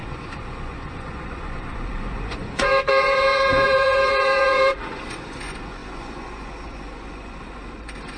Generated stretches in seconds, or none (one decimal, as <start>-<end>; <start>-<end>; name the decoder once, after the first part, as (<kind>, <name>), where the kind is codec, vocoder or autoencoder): 0.0-8.2 (vocoder, Vocos)